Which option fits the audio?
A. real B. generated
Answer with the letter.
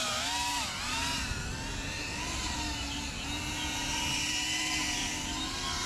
A